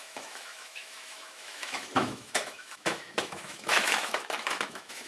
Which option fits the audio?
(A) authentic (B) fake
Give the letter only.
B